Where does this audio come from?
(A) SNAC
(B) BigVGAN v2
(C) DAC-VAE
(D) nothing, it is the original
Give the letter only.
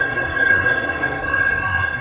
A